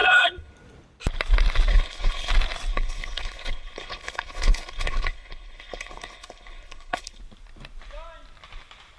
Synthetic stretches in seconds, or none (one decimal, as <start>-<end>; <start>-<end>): 0.0-0.5; 1.7-2.3; 2.7-7.2